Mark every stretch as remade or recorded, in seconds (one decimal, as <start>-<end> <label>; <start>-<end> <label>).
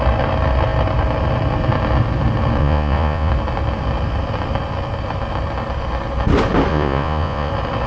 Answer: 0.0-2.6 recorded; 2.6-3.3 remade; 3.3-6.7 recorded; 6.7-7.5 remade; 7.5-7.9 recorded